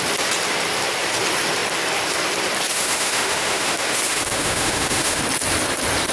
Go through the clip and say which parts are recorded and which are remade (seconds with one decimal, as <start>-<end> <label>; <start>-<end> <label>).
0.0-2.7 recorded; 2.7-5.2 remade; 5.2-6.1 recorded